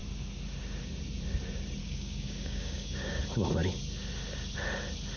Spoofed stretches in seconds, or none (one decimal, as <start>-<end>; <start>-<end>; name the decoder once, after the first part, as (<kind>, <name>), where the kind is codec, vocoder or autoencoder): 1.8-3.2 (codec, DAC)